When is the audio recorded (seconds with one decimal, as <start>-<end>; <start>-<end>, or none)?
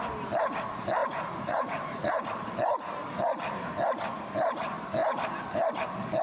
0.0-1.0; 2.3-6.2